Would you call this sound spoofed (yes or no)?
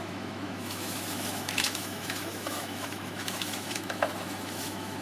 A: yes